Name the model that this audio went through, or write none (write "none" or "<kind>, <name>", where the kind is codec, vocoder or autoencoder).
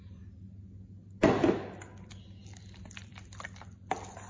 none